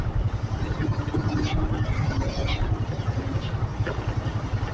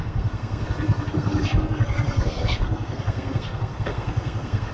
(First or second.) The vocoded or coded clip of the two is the second